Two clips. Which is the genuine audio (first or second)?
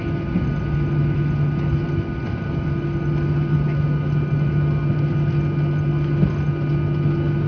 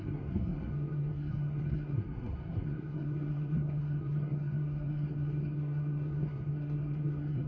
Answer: first